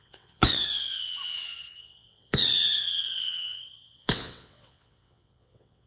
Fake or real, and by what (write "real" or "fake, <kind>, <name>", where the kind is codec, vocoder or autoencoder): fake, vocoder, WaveNeXt